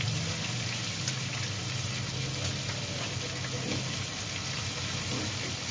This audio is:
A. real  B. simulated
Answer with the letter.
A